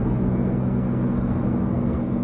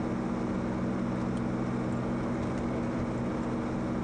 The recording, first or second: second